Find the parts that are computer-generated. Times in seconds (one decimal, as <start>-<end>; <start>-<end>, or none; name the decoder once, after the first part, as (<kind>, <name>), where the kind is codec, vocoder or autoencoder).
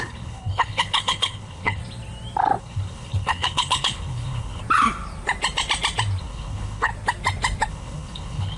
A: 0.0-1.8 (codec, HILCodec); 2.6-4.6; 6.2-6.9; 7.7-8.6